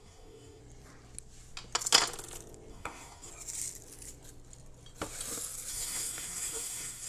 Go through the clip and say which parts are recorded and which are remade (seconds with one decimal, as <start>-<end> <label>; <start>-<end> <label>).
0.0-0.6 remade; 0.6-2.7 recorded; 2.7-3.3 remade; 3.3-5.7 recorded; 5.7-7.1 remade

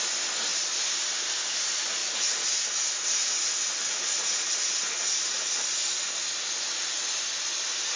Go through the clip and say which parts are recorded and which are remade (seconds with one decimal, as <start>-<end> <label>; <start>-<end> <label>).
0.0-8.0 recorded

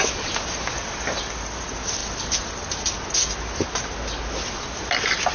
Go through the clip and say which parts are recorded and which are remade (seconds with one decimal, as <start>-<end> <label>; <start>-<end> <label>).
0.0-5.3 recorded

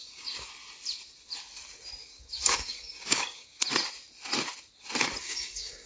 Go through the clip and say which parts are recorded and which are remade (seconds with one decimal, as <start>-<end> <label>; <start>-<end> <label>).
0.0-0.5 remade; 0.5-2.0 recorded; 2.0-3.6 remade; 3.6-5.2 recorded; 5.2-5.9 remade

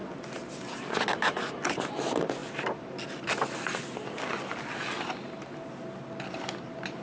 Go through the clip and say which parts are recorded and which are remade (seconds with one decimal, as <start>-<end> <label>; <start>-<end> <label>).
0.0-7.0 recorded

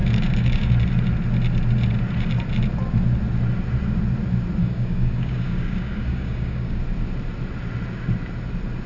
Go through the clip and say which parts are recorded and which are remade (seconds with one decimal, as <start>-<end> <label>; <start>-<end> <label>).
0.0-0.7 remade; 0.7-4.6 recorded; 4.6-6.8 remade; 6.8-8.9 recorded

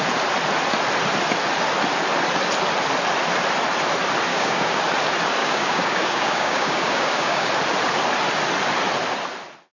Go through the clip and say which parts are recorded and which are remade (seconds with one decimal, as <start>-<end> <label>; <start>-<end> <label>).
0.0-4.3 recorded; 4.3-4.8 remade; 4.8-5.4 recorded; 5.4-7.5 remade; 7.5-9.7 recorded